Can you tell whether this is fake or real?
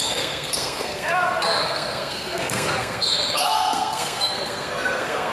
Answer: fake